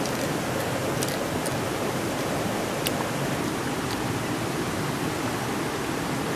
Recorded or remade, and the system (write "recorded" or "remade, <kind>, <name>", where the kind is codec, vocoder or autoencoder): recorded